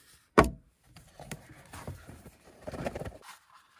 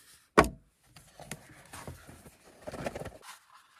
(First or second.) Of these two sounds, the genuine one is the second